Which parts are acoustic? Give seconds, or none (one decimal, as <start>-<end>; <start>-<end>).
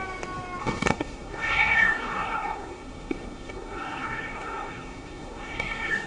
0.0-0.6